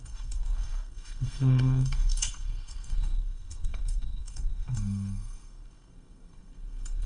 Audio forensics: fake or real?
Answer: fake